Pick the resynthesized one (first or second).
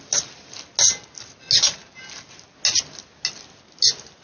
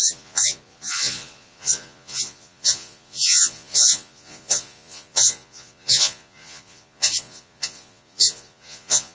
second